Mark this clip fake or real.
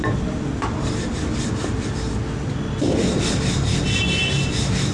real